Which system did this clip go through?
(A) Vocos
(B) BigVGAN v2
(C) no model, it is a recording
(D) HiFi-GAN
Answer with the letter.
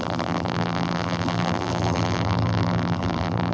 B